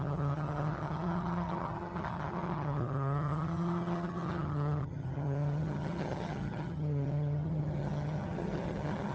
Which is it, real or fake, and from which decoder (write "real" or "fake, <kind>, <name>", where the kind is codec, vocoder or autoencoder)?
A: fake, vocoder, HiFi-GAN